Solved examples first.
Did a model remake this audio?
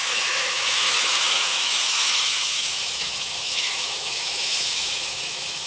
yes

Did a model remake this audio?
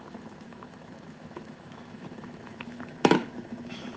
yes